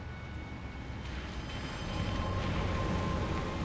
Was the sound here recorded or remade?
recorded